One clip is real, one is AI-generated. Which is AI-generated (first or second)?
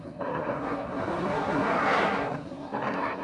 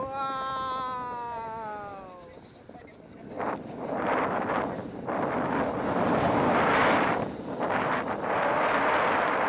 first